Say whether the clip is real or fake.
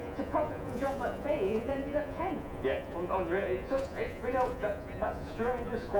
fake